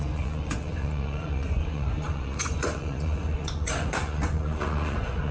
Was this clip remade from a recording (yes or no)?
yes